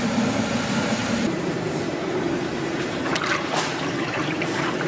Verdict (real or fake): fake